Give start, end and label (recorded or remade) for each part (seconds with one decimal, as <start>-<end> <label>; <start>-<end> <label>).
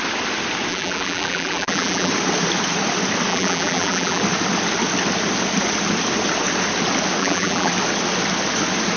0.0-0.7 recorded; 0.7-2.1 remade; 2.1-3.3 recorded; 3.3-4.2 remade; 4.2-7.2 recorded; 7.2-7.7 remade; 7.7-9.0 recorded